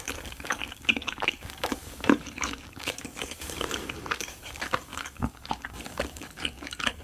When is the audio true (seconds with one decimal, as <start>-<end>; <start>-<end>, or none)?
none